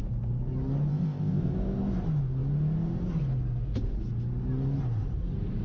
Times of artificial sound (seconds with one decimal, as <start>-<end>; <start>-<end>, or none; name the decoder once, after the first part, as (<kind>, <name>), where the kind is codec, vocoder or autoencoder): 0.9-1.5 (codec, ZipCodec)